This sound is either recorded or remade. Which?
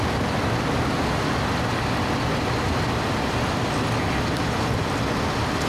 recorded